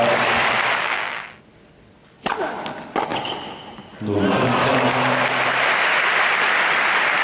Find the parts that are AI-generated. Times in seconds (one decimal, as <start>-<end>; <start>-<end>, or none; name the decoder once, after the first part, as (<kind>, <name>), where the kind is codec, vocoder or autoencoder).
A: 0.8-1.4 (vocoder, BigVGAN v2)